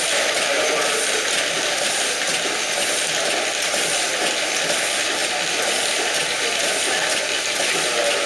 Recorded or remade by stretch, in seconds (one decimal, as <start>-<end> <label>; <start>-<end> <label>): 0.0-8.3 recorded

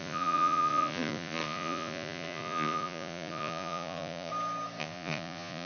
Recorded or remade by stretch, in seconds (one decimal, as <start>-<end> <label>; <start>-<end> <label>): 0.0-4.3 remade; 4.3-4.8 recorded; 4.8-5.7 remade

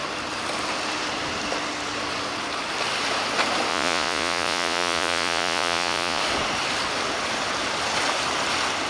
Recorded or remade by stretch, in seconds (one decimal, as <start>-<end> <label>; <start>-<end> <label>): 0.0-3.7 recorded; 3.7-6.2 remade; 6.2-8.9 recorded

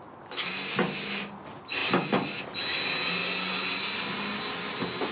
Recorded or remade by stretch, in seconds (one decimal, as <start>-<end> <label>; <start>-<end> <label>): 0.0-5.1 recorded

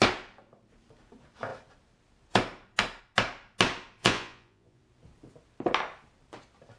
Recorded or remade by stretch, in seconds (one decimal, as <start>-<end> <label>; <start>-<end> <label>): 0.0-4.0 recorded; 4.0-4.8 remade; 4.8-6.8 recorded

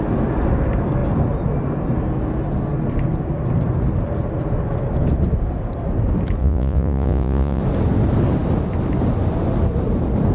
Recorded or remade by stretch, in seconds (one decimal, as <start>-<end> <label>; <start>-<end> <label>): 0.0-6.4 recorded; 6.4-7.6 remade; 7.6-10.3 recorded

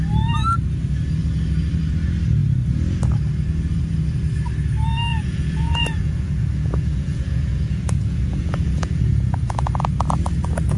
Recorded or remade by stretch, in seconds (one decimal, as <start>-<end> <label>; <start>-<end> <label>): 0.0-5.1 recorded; 5.1-9.8 remade; 9.8-10.8 recorded

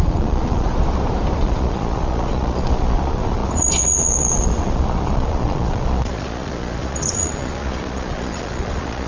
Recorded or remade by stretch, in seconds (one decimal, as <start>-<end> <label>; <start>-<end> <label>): 0.0-0.7 remade; 0.7-1.4 recorded; 1.4-9.1 remade